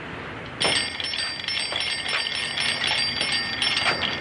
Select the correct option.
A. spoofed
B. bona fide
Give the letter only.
B